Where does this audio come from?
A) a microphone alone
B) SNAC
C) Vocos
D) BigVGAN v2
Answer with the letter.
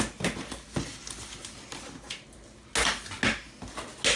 A